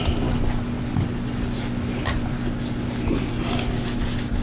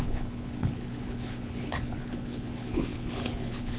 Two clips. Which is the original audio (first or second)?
first